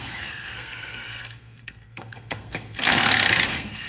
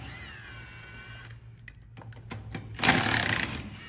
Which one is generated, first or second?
first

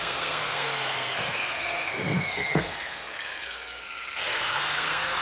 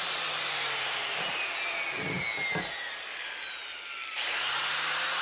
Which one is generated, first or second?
first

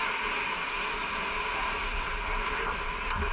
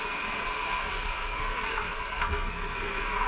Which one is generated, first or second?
second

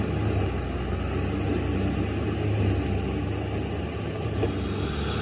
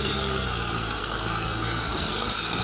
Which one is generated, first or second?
second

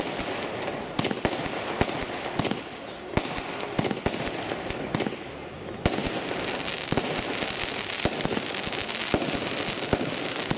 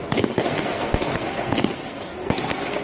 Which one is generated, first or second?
second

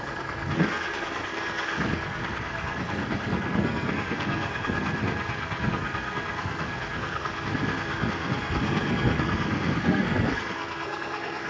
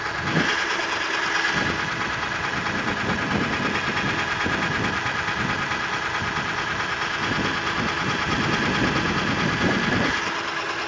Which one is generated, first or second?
first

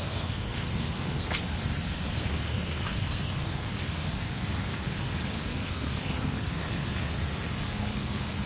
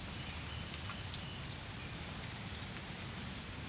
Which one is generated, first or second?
first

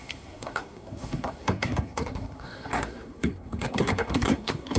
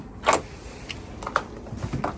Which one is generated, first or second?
first